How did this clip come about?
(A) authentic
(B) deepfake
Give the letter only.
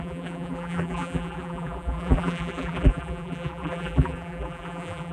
B